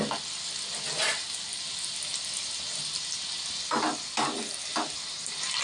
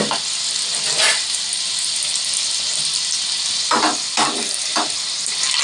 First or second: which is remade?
second